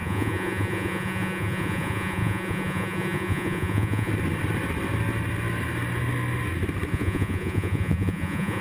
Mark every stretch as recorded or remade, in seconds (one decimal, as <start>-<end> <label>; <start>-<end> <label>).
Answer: 0.0-4.1 remade; 4.1-6.9 recorded; 6.9-8.6 remade